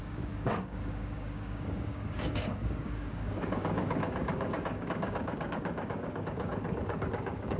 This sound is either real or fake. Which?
fake